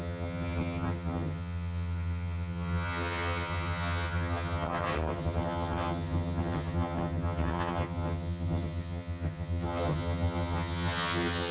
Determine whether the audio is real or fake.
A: fake